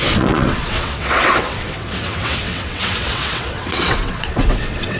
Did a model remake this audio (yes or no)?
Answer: yes